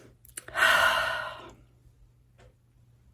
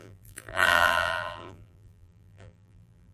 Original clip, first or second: first